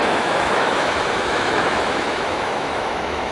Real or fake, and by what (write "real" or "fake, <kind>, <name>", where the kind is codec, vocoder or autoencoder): fake, autoencoder, DAC-VAE